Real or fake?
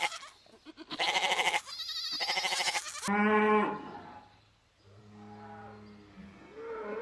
real